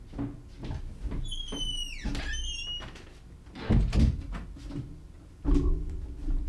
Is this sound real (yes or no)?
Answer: yes